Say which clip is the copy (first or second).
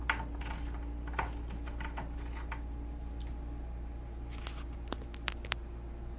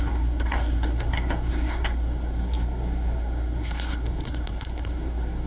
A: second